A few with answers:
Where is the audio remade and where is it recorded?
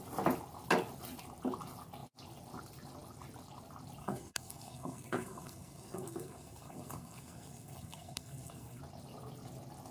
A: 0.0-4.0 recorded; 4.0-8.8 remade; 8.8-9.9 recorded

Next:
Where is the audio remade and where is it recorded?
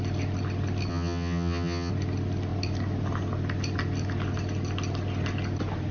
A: 0.0-0.9 recorded; 0.9-1.9 remade; 1.9-5.9 recorded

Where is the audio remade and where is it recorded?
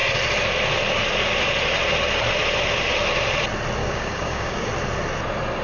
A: 0.0-3.8 recorded; 3.8-4.7 remade; 4.7-5.6 recorded